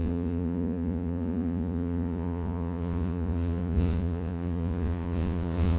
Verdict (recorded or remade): remade